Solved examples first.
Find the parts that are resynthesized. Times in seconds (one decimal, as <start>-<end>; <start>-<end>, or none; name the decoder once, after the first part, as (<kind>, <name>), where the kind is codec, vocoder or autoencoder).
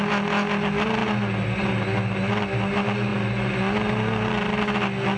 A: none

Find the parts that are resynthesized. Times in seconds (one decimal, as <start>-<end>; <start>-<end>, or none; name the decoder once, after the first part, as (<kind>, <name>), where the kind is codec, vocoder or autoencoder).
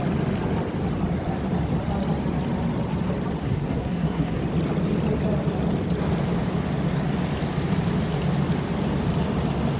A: 3.4-4.4 (codec, SNAC)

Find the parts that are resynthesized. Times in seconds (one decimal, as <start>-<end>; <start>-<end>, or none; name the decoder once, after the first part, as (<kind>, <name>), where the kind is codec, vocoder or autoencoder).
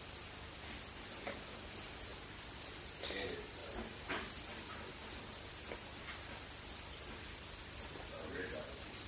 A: 2.1-2.8 (vocoder, BigVGAN v2)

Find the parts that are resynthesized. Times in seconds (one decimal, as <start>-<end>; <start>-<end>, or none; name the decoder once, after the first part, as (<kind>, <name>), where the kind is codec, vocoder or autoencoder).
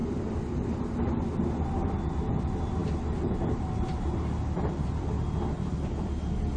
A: 0.0-0.8 (vocoder, BigVGAN v2); 2.8-5.4